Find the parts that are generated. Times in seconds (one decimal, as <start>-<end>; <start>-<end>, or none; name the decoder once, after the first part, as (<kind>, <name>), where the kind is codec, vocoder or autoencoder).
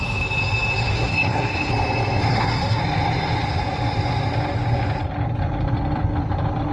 0.9-1.7 (codec, SNAC); 2.3-2.8